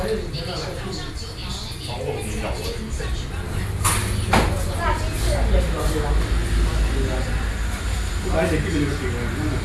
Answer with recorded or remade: recorded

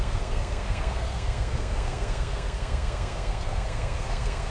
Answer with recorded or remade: remade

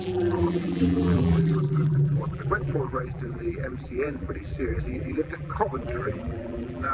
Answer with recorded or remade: remade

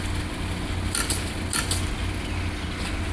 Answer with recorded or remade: recorded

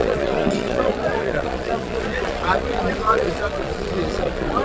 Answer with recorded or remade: remade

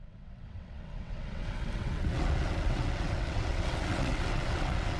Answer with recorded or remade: remade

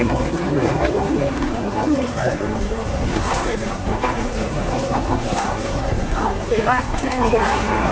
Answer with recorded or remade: remade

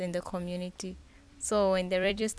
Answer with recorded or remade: remade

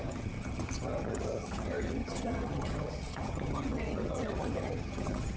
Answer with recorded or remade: remade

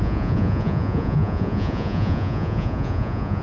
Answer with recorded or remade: remade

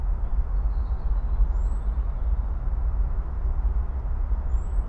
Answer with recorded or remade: recorded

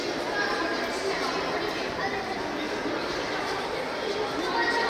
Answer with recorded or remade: recorded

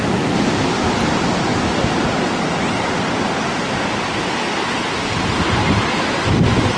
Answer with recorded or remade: recorded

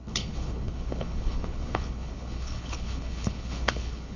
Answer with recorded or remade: remade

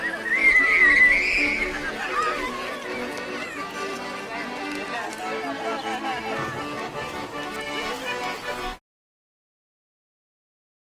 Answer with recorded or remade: recorded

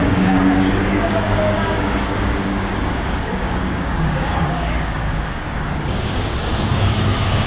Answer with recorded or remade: remade